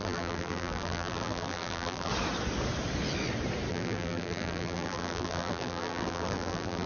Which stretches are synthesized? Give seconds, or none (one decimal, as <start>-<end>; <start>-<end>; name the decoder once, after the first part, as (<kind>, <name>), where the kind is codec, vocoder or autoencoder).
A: 0.0-2.1 (vocoder, BigVGAN v2); 3.7-6.9